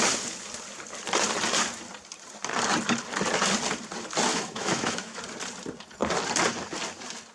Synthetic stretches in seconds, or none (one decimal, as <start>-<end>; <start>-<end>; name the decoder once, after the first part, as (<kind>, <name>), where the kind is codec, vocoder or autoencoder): 4.3-5.2 (autoencoder, DAC-VAE)